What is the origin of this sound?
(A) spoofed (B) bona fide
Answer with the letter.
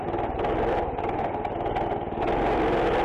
B